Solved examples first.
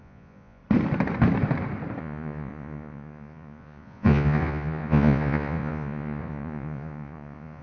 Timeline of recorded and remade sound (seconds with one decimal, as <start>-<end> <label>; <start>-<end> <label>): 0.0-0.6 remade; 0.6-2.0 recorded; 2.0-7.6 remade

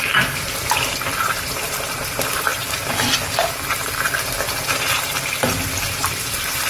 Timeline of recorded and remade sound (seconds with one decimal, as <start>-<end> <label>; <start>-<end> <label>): 0.0-2.5 remade; 2.5-6.7 recorded

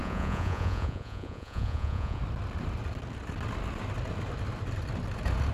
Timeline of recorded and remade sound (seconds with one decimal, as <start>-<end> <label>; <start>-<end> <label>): 0.0-2.2 remade; 2.2-5.5 recorded

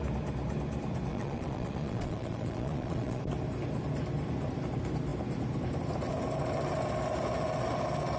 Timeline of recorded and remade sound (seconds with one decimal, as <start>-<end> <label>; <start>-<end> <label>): 0.0-1.1 recorded; 1.1-3.2 remade; 3.2-8.2 recorded

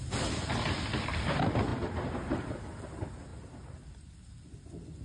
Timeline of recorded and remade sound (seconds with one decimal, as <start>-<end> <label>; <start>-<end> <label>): 0.0-5.0 recorded

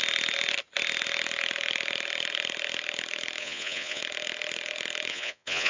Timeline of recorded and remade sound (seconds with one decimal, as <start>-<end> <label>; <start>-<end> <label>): 0.0-3.4 recorded; 3.4-4.0 remade; 4.0-5.1 recorded; 5.1-5.7 remade

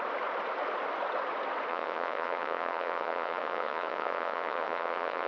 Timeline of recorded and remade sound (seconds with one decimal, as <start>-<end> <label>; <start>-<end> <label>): 0.0-1.7 recorded; 1.7-5.3 remade

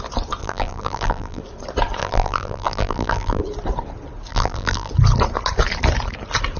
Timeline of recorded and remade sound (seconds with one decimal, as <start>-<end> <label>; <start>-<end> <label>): 0.0-0.4 recorded; 0.4-1.4 remade; 1.4-2.0 recorded; 2.0-3.4 remade; 3.4-4.3 recorded; 4.3-4.9 remade; 4.9-6.6 recorded